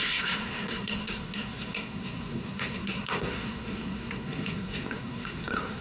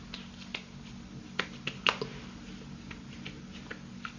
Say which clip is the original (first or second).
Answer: second